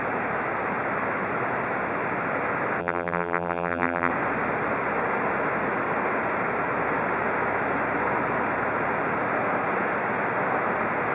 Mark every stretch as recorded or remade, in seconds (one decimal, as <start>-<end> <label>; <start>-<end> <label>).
0.0-2.8 recorded; 2.8-4.1 remade; 4.1-11.1 recorded